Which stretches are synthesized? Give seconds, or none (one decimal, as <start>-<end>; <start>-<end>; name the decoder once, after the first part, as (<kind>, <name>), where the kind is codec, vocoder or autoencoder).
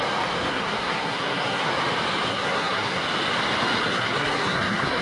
0.5-1.7 (codec, SNAC); 2.3-3.0; 3.9-5.0